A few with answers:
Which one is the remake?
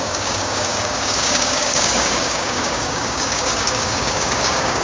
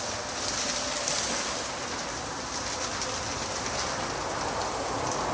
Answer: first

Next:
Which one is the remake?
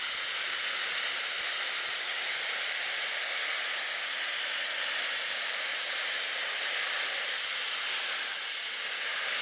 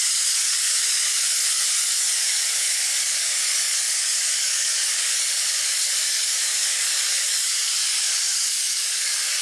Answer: second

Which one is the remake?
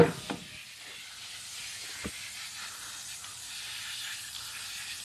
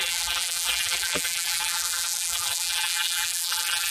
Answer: second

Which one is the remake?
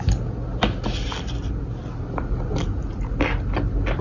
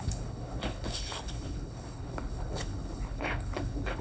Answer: second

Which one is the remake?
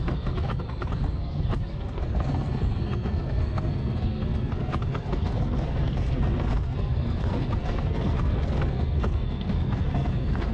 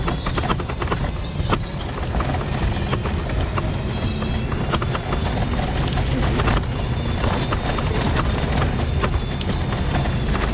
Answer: first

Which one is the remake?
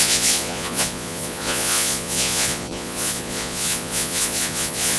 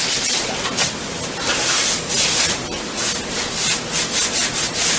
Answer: first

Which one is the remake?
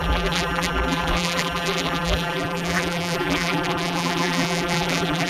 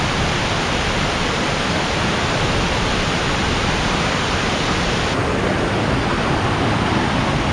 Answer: first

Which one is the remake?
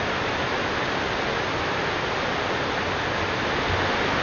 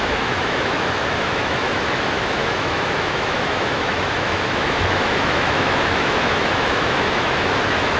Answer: second